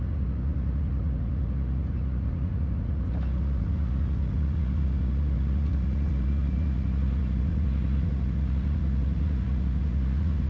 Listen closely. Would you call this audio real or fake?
fake